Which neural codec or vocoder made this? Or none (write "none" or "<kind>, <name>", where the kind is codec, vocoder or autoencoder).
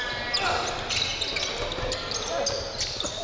none